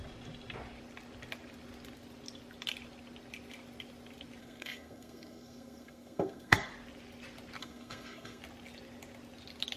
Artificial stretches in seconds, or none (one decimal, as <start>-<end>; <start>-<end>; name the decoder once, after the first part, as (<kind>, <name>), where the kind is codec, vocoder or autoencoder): 4.4-6.7 (codec, SNAC); 7.6-8.4